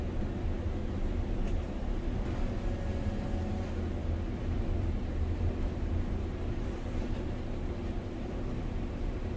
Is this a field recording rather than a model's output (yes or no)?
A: yes